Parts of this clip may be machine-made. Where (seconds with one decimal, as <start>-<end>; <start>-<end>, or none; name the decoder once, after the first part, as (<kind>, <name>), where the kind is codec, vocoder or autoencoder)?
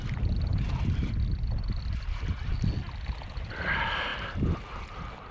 none